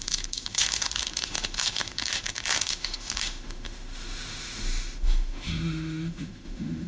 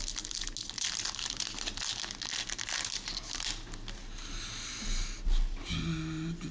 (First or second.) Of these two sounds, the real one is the second